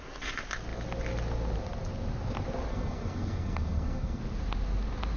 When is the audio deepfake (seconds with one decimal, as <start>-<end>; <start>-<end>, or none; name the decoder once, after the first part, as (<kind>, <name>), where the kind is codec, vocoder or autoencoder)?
2.7-4.2 (codec, SNAC)